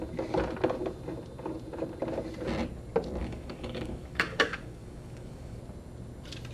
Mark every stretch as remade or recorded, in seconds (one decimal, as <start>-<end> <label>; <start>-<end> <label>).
0.0-3.2 recorded; 3.2-5.6 remade; 5.6-6.5 recorded